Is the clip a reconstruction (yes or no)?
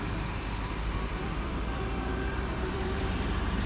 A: yes